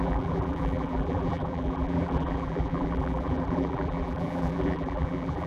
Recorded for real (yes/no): no